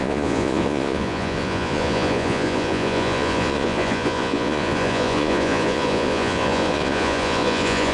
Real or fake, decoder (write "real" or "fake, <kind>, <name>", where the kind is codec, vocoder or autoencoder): fake, vocoder, Vocos